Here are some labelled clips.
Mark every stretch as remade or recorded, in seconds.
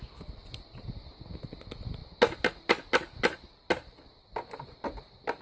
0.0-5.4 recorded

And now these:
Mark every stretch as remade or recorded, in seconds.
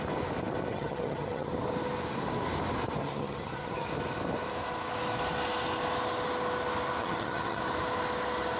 0.0-0.7 recorded; 0.7-1.5 remade; 1.5-3.0 recorded; 3.0-3.9 remade; 3.9-7.0 recorded; 7.0-7.6 remade; 7.6-8.6 recorded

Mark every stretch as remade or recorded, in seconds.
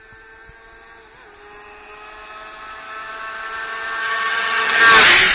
0.0-4.0 recorded; 4.0-4.8 remade; 4.8-5.3 recorded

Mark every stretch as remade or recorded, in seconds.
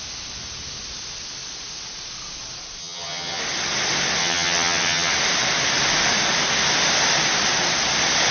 0.0-2.8 recorded; 2.8-3.4 remade; 3.4-4.2 recorded; 4.2-5.1 remade; 5.1-8.3 recorded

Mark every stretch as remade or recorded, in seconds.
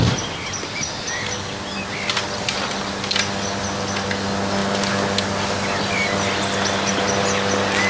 0.0-7.9 recorded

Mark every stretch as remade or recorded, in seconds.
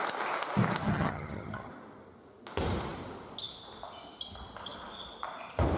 0.0-0.8 recorded; 0.8-1.7 remade; 1.7-5.8 recorded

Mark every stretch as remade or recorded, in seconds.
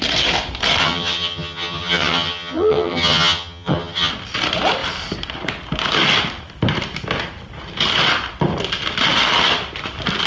0.0-0.8 recorded; 0.8-4.1 remade; 4.1-10.3 recorded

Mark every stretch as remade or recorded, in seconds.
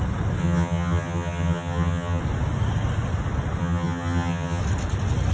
0.0-0.4 recorded; 0.4-2.2 remade; 2.2-3.6 recorded; 3.6-4.6 remade; 4.6-5.3 recorded